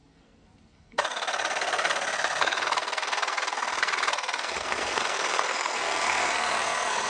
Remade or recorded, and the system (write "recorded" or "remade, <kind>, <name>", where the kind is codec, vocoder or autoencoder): remade, codec, SNAC